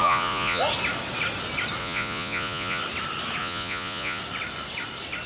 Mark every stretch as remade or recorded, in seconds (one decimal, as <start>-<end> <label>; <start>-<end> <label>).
0.0-0.6 remade; 0.6-1.8 recorded; 1.8-2.8 remade; 2.8-3.4 recorded; 3.4-4.2 remade; 4.2-5.3 recorded

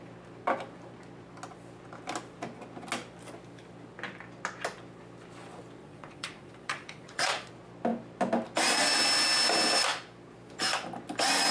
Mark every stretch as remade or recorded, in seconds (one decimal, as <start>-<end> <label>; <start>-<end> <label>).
0.0-5.8 recorded; 5.8-7.5 remade; 7.5-11.5 recorded

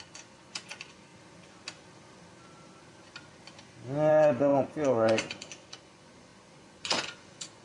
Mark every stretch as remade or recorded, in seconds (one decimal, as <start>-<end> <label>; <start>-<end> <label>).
0.0-1.1 remade; 1.1-4.1 recorded; 4.1-7.6 remade

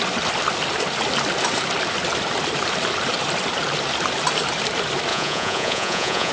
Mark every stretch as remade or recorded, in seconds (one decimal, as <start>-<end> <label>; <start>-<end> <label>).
0.0-5.1 recorded; 5.1-6.3 remade